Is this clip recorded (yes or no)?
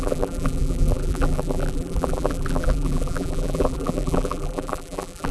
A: no